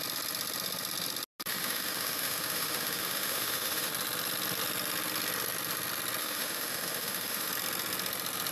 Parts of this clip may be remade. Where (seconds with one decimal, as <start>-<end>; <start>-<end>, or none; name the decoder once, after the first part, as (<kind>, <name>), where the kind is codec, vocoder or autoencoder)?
1.5-3.9 (autoencoder, DAC-VAE); 6.2-7.5